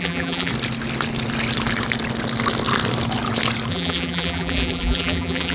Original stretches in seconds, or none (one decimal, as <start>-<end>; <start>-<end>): 0.5-3.7

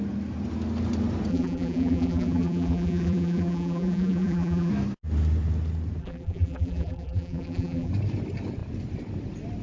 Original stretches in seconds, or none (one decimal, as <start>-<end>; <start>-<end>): 0.0-1.3; 4.7-6.0; 7.9-9.6

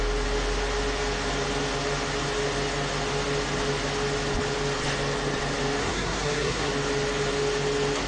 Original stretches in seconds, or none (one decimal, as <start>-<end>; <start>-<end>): 0.0-5.8; 6.7-8.1

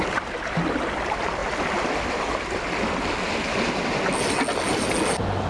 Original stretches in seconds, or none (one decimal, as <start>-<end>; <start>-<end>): 0.0-5.5

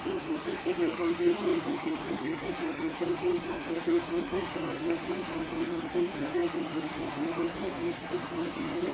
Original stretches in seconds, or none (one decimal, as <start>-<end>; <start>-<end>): none

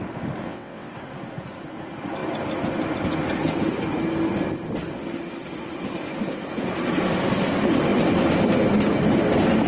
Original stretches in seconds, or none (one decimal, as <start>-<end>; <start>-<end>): 0.0-0.4; 0.9-9.7